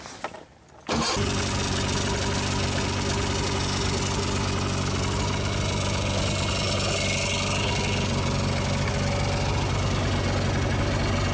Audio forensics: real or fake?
real